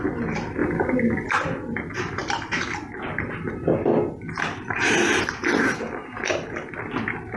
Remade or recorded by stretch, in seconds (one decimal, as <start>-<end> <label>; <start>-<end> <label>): 0.0-7.4 recorded